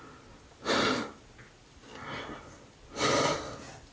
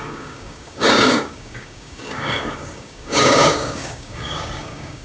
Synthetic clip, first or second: second